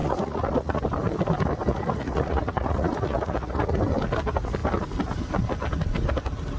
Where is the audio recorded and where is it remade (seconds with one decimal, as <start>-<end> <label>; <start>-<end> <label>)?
0.0-0.8 remade; 0.8-1.7 recorded; 1.7-3.8 remade; 3.8-6.6 recorded